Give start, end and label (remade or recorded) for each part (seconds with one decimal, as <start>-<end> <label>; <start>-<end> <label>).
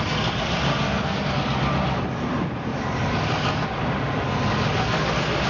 0.0-0.7 recorded; 0.7-1.2 remade; 1.2-5.5 recorded